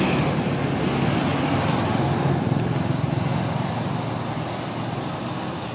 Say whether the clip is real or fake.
real